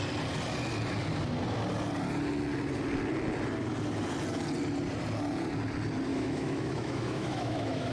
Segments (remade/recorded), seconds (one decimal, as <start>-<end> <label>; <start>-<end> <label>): 0.0-6.1 recorded; 6.1-7.9 remade